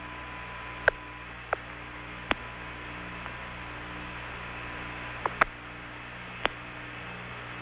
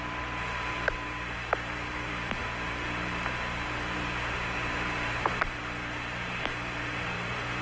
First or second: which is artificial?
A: second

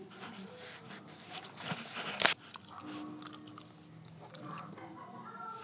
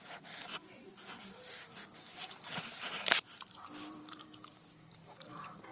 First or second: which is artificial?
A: second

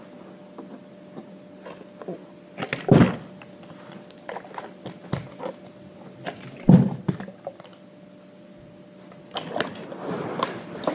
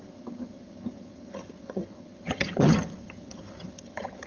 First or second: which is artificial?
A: second